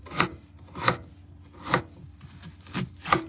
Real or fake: real